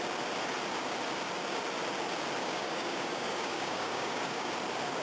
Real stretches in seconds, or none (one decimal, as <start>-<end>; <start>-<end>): 0.0-2.4; 4.5-5.0